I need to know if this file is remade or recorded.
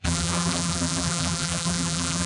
remade